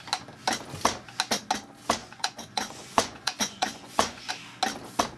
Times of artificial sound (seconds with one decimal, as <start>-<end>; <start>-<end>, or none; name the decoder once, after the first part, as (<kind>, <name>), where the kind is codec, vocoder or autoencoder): 2.0-4.3 (vocoder, Vocos)